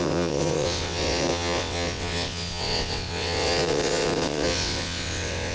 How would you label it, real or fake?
fake